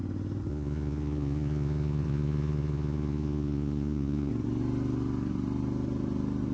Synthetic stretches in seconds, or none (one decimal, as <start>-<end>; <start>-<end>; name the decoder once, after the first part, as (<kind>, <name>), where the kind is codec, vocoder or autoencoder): 0.5-4.3 (vocoder, Vocos)